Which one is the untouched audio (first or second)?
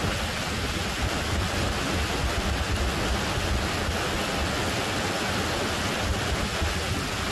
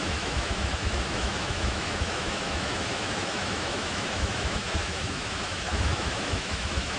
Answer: first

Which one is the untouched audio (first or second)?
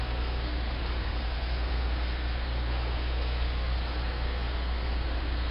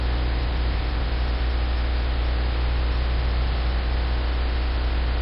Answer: second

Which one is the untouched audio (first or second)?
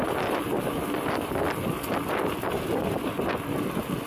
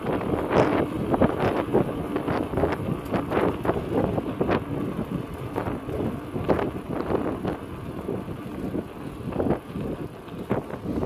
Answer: second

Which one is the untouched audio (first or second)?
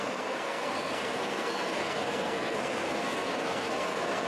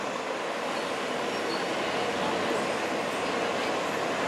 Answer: second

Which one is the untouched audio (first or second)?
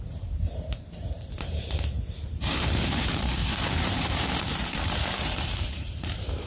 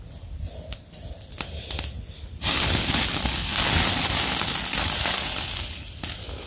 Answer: second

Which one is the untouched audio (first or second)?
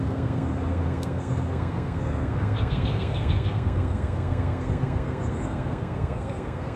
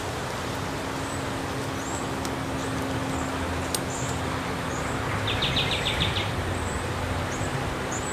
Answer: second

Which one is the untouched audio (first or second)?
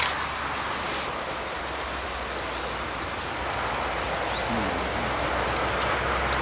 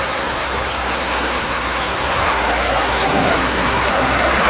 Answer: first